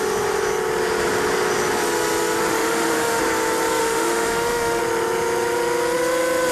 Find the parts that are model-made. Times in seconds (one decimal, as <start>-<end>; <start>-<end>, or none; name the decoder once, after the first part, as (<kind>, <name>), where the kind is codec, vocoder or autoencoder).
2.5-3.2 (autoencoder, DAC-VAE); 3.8-4.8

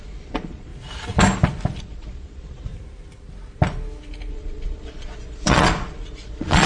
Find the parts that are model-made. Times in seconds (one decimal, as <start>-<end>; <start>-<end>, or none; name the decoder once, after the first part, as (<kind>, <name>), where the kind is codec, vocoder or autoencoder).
0.0-0.7 (vocoder, Vocos); 1.8-2.7; 4.3-6.7